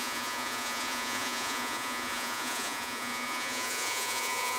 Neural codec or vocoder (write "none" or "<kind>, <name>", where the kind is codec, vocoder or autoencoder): vocoder, Vocos